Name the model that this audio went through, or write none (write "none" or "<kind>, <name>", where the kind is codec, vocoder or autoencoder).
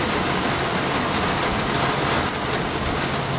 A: none